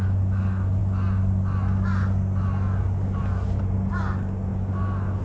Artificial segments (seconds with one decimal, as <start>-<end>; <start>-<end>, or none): none